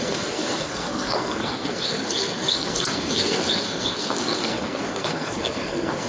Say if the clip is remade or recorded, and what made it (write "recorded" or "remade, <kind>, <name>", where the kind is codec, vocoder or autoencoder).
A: remade, codec, SNAC